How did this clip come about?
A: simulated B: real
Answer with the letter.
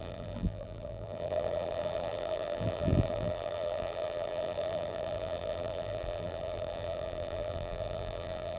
A